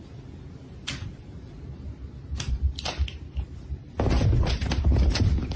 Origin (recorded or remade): recorded